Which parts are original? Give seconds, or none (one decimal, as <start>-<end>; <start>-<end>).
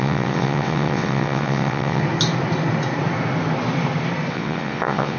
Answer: 2.0-4.3